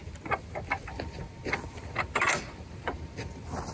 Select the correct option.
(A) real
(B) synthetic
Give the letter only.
A